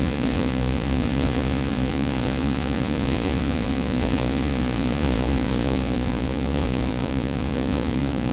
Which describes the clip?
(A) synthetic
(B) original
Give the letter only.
A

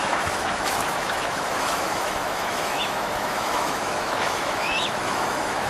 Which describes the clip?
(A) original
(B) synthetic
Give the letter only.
B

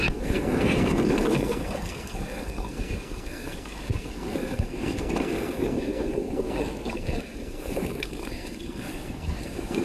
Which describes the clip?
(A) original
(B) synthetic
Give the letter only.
B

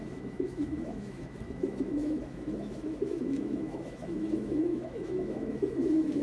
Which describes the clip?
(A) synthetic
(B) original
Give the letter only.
A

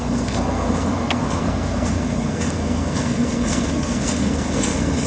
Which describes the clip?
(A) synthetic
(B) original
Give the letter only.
A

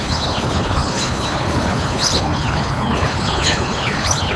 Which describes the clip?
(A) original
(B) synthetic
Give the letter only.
B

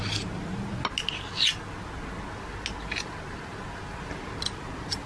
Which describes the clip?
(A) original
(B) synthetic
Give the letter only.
A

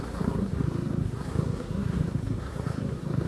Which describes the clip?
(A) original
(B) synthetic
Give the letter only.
B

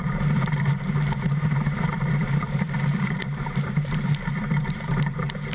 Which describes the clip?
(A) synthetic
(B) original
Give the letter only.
A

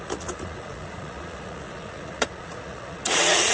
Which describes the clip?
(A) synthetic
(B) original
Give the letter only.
A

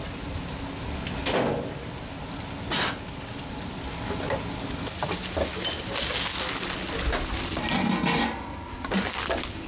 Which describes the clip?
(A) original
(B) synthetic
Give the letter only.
A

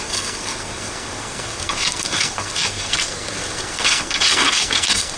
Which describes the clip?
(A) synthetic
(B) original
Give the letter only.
A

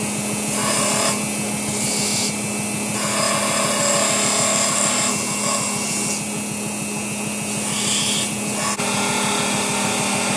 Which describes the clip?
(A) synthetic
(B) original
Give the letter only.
B